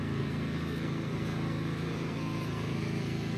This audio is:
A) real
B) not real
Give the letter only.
B